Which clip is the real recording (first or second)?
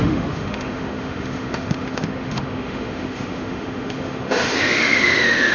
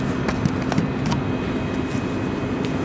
second